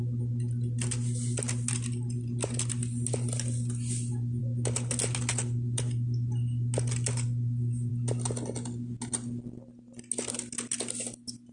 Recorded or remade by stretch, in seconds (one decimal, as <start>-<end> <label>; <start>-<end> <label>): 0.0-11.5 recorded